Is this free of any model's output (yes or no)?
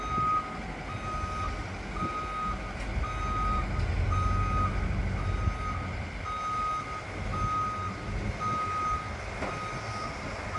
yes